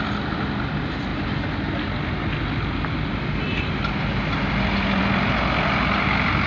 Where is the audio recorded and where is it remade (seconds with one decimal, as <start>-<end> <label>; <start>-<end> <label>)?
0.0-6.5 recorded